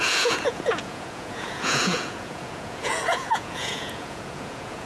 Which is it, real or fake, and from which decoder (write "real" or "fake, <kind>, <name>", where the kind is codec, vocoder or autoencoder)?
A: fake, vocoder, Vocos